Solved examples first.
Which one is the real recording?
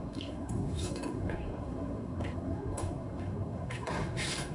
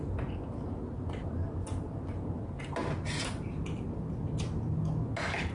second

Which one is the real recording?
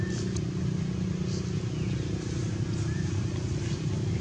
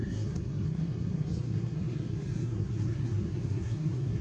first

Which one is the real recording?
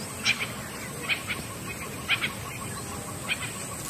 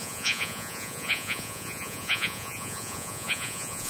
first